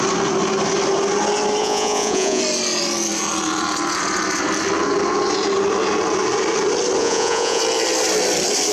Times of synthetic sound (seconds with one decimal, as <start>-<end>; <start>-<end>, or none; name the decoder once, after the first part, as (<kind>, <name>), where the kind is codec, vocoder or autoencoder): 1.6-2.4 (vocoder, Vocos); 7.0-7.6